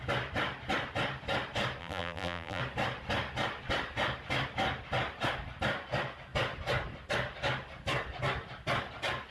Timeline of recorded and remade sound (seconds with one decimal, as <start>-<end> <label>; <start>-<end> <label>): 0.0-1.8 recorded; 1.8-2.6 remade; 2.6-9.3 recorded